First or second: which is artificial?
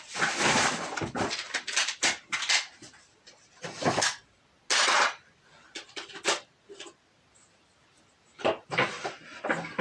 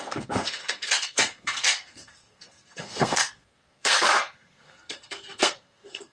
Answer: second